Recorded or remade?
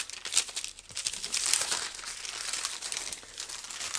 recorded